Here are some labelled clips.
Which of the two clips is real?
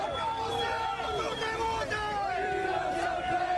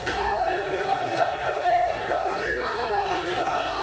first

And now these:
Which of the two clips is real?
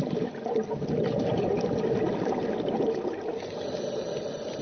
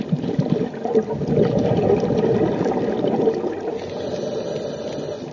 second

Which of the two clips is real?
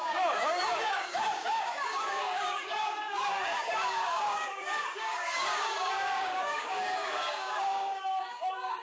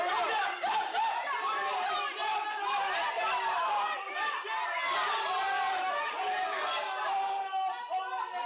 second